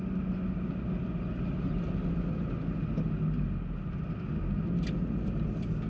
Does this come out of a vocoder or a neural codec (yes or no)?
no